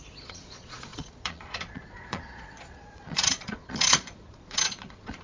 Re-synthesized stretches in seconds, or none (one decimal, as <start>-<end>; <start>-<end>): 0.0-5.2